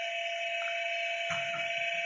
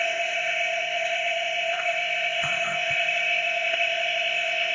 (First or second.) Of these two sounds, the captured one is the first